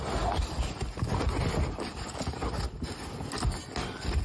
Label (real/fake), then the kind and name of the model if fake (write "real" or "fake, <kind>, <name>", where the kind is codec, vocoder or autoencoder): real